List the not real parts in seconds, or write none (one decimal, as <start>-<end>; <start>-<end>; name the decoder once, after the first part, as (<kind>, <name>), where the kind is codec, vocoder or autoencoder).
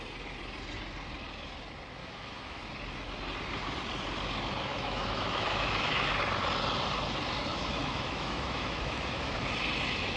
2.0-2.6 (autoencoder, DAC-VAE); 4.7-6.1; 7.5-9.4